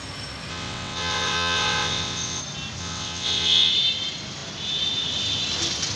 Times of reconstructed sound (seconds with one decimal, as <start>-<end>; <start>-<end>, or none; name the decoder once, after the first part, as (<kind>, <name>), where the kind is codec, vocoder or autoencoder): 0.5-2.4 (vocoder, WaveNeXt); 2.8-3.7